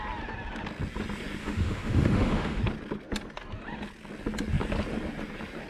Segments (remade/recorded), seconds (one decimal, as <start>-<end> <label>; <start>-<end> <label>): 0.0-1.4 recorded; 1.4-2.6 remade; 2.6-5.7 recorded